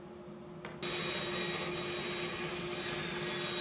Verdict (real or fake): real